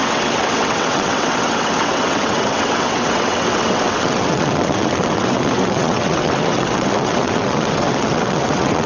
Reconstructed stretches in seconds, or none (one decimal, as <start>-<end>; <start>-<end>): 0.0-8.9